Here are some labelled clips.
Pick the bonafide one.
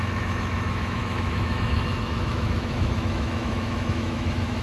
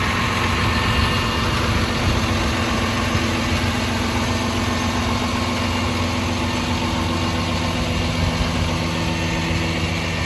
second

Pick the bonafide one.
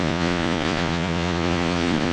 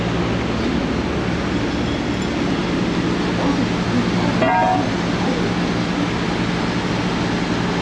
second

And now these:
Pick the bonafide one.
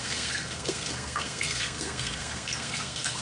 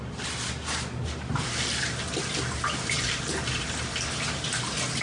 second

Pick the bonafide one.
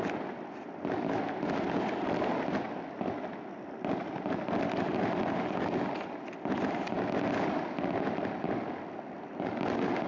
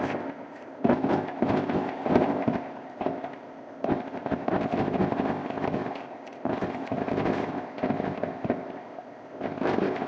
first